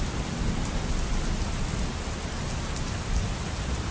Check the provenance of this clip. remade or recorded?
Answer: recorded